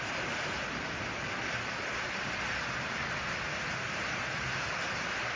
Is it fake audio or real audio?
real